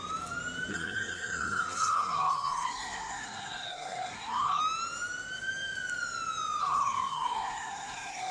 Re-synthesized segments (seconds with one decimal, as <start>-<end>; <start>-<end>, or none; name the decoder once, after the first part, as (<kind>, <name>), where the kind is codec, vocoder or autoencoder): 0.7-4.6 (codec, SNAC); 6.6-8.3